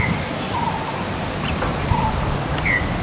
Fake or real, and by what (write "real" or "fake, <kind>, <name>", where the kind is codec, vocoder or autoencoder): real